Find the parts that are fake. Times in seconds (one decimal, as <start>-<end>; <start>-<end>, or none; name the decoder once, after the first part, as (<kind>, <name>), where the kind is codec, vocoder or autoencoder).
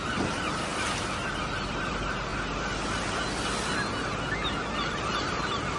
0.0-0.7 (vocoder, BigVGAN v2); 1.8-2.3; 4.9-5.8